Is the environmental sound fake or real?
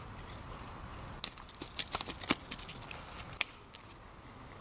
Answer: real